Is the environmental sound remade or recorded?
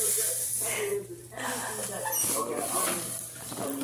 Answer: recorded